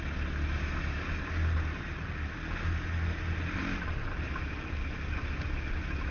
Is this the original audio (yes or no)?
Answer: yes